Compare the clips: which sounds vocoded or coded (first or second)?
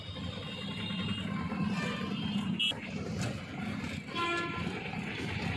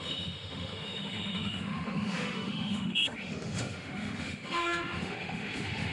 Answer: second